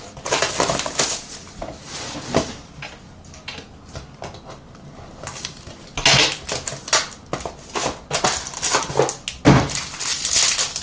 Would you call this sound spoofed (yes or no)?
no